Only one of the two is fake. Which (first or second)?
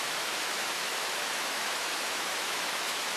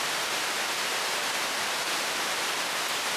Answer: first